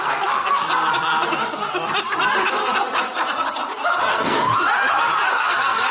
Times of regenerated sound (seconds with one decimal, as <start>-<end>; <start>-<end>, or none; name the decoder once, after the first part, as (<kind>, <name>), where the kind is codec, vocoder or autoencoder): 0.0-0.6 (codec, SNAC); 4.1-4.5; 5.3-5.9